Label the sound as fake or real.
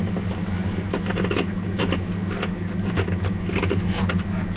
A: real